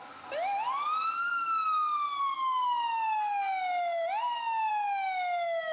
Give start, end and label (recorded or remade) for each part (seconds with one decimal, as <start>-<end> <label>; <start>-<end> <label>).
0.0-5.7 recorded